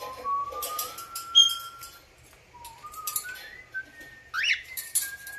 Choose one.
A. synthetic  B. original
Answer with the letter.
B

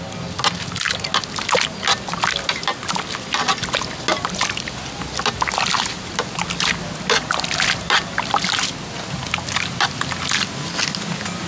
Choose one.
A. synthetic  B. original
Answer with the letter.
B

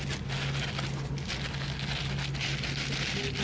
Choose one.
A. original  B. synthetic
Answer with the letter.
A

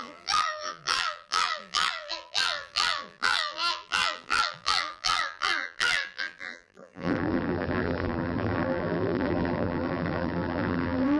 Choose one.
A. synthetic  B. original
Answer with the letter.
A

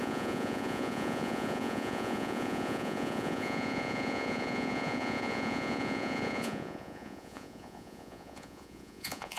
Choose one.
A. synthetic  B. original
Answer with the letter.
A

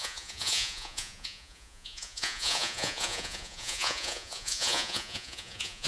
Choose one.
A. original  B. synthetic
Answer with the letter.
B